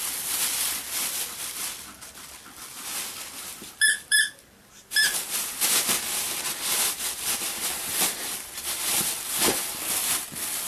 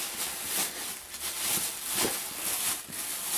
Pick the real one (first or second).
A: second